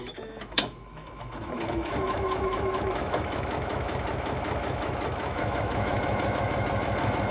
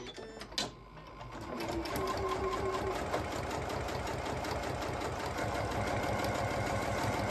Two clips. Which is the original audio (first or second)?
second